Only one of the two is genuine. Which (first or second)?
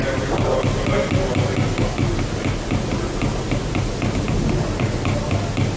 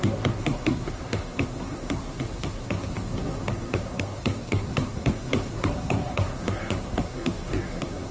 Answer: first